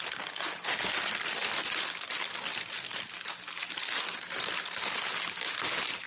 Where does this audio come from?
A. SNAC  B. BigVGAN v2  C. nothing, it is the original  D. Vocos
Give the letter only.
C